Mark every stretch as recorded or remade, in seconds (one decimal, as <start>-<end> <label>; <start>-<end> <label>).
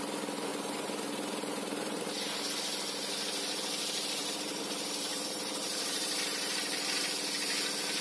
0.0-0.5 recorded; 0.5-2.5 remade; 2.5-4.2 recorded; 4.2-7.1 remade; 7.1-8.0 recorded